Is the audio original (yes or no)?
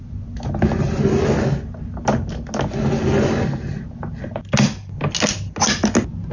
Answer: yes